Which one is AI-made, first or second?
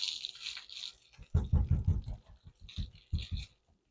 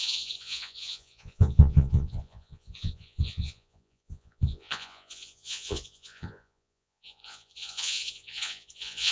second